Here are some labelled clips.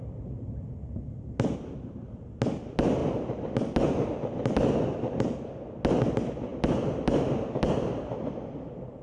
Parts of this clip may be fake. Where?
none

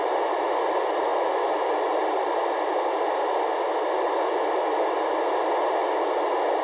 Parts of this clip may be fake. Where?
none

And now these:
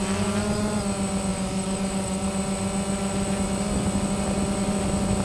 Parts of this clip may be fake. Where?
1.3-2.3

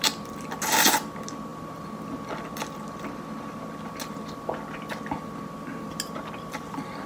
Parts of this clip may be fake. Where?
none

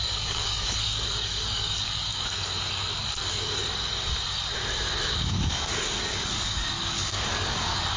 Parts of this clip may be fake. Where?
0.0-2.1; 3.1-3.6; 5.0-8.0

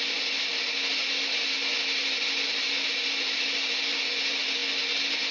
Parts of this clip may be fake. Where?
none

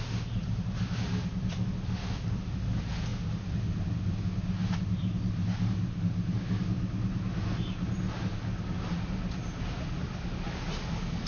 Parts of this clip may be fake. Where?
none

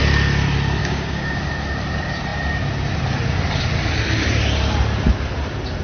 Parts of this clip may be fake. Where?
0.8-1.4